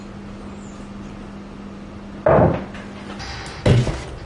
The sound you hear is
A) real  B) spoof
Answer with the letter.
A